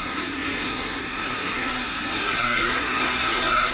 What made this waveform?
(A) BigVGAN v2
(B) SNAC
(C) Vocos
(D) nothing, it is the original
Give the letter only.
B